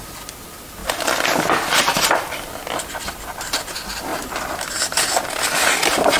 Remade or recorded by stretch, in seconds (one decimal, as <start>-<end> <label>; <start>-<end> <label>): 0.0-0.8 recorded; 0.8-3.1 remade; 3.1-6.2 recorded